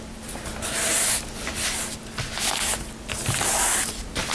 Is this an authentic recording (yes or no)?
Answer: yes